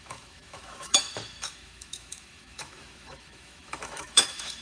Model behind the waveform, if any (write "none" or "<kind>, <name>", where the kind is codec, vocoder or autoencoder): autoencoder, DAC-VAE